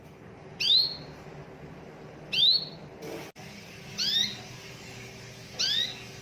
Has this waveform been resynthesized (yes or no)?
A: no